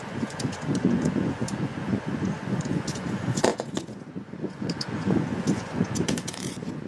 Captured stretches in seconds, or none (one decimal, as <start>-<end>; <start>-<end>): none